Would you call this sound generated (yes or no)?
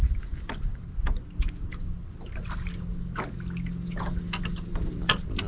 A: no